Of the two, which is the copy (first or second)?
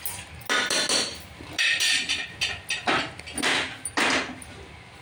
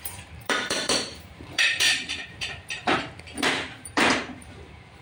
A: second